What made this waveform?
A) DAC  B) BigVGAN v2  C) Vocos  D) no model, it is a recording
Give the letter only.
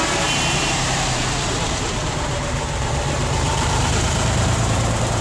B